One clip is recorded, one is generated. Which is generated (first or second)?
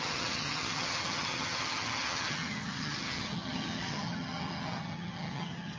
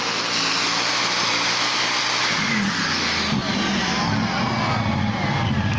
first